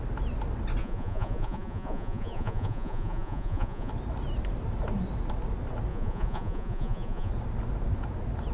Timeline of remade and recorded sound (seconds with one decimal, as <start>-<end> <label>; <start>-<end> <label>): 0.0-0.8 recorded; 0.8-3.9 remade; 3.9-5.9 recorded; 5.9-7.3 remade; 7.3-8.5 recorded